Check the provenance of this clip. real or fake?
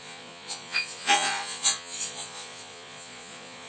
fake